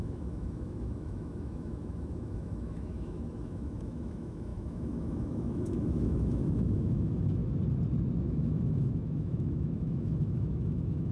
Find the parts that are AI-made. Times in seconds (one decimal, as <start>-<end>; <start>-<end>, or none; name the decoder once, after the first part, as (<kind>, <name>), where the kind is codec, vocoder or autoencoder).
0.0-7.4 (autoencoder, DAC-VAE); 8.2-11.1

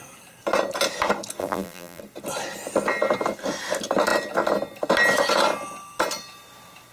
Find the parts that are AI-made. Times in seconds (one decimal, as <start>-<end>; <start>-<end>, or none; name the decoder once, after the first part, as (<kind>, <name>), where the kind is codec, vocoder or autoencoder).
1.4-2.0 (vocoder, BigVGAN v2)

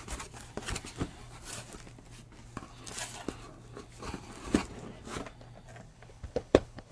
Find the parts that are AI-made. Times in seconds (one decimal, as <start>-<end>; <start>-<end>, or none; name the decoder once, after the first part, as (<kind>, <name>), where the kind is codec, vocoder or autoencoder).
5.9-6.9 (codec, HILCodec)

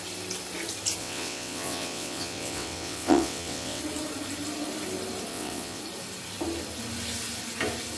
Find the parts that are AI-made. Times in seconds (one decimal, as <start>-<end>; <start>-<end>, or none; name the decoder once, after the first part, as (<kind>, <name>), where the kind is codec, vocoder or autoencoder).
1.0-3.8 (vocoder, WaveNeXt); 5.3-5.8

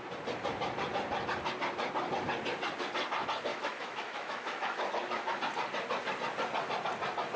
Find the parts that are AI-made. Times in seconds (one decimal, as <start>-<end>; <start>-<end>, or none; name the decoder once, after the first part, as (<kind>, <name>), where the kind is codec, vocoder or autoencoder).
3.5-5.4 (autoencoder, DAC-VAE)

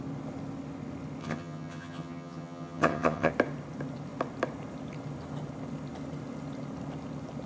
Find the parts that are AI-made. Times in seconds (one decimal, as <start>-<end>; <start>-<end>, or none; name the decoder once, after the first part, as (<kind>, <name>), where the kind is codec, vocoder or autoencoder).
1.2-3.3 (vocoder, HiFi-GAN)